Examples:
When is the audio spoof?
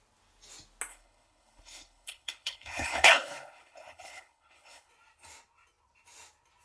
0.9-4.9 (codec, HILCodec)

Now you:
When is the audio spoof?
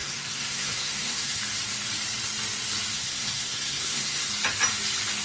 0.0-1.4 (codec, SNAC); 2.9-4.3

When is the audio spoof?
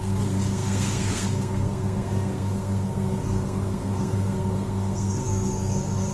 0.0-6.1 (codec, SNAC)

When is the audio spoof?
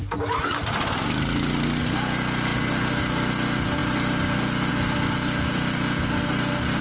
none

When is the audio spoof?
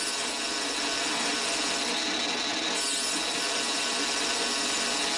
none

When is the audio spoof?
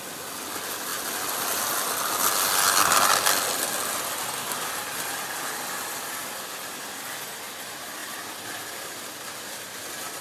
8.0-10.2 (vocoder, BigVGAN v2)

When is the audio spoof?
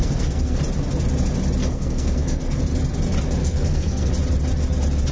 0.0-0.6 (codec, SNAC); 1.6-2.6; 3.4-4.1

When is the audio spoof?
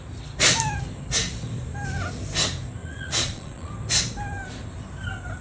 2.8-3.7 (vocoder, Vocos)